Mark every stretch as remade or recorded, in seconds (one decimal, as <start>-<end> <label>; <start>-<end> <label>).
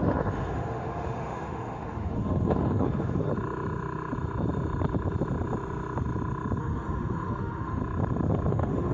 0.0-3.3 remade; 3.3-6.6 recorded; 6.6-7.8 remade; 7.8-8.5 recorded; 8.5-8.9 remade